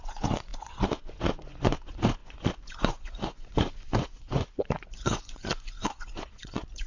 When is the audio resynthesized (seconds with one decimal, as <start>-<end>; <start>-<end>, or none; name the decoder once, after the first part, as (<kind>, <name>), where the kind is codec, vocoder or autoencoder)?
0.0-6.9 (vocoder, Vocos)

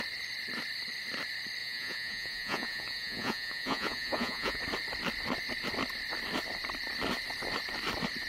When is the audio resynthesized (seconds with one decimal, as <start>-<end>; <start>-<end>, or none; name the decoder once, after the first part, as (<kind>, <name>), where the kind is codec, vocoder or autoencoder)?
1.6-4.6 (vocoder, Vocos)

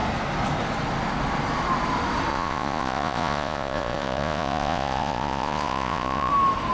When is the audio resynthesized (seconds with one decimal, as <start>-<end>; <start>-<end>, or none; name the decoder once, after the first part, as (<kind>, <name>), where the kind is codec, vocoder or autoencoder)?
2.3-6.3 (vocoder, Vocos)

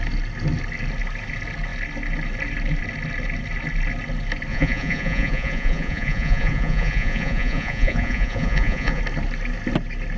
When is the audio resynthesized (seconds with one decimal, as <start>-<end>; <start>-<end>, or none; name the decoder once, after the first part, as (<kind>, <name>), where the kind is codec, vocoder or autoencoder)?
4.5-9.0 (vocoder, Vocos)